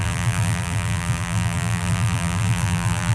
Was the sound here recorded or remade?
remade